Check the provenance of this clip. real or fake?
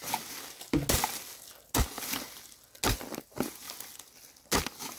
real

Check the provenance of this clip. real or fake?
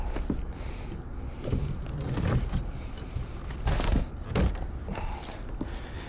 real